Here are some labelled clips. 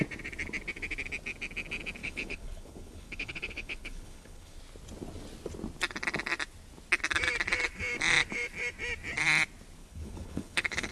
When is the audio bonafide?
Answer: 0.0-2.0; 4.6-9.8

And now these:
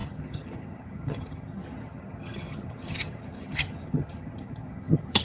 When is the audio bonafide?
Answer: none

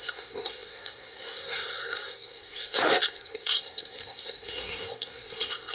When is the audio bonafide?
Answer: none

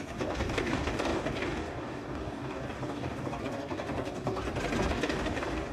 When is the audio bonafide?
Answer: 4.4-4.9

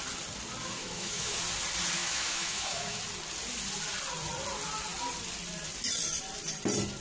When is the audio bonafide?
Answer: 0.0-0.8; 1.4-2.0; 3.0-7.0

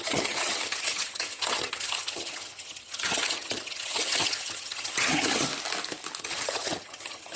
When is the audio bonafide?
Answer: 5.5-6.2

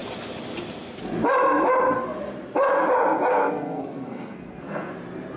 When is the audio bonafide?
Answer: 0.0-3.3; 4.9-5.4